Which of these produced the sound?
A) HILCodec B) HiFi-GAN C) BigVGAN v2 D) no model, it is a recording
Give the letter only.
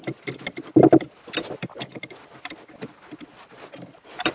D